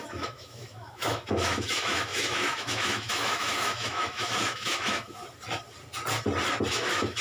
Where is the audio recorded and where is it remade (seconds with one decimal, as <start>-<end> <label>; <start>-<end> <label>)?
0.0-5.2 remade; 5.2-6.7 recorded; 6.7-7.2 remade